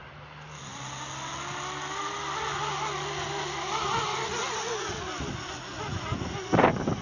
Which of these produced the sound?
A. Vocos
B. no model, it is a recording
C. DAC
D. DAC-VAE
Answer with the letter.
B